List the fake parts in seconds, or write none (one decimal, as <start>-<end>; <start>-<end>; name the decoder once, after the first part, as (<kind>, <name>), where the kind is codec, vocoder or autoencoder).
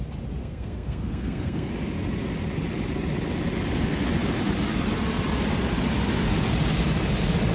0.4-1.7 (codec, SNAC)